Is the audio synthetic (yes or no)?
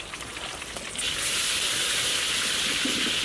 no